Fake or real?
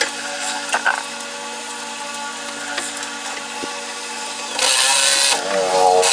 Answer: real